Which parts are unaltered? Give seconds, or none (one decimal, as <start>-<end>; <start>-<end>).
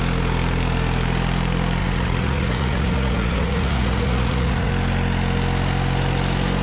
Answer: 0.0-1.8; 4.7-6.6